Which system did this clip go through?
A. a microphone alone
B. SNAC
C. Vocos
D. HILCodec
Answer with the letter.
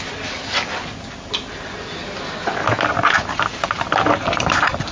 A